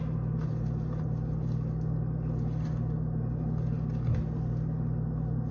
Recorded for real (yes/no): yes